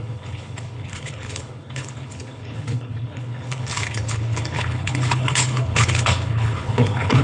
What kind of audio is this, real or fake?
fake